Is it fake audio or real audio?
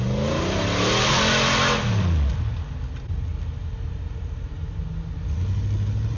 real